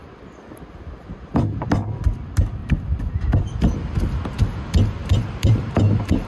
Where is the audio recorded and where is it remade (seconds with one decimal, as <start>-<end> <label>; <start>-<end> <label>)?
0.0-2.6 recorded; 2.6-3.4 remade; 3.4-5.0 recorded; 5.0-6.3 remade